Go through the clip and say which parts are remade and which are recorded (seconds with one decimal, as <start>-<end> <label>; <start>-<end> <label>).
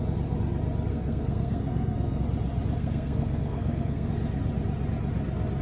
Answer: 0.0-0.9 recorded; 0.9-2.2 remade; 2.2-2.8 recorded; 2.8-4.1 remade; 4.1-5.6 recorded